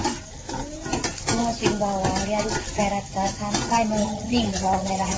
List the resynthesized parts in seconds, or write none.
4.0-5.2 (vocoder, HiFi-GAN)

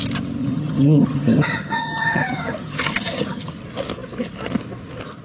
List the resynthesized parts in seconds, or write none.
0.4-3.5 (vocoder, HiFi-GAN)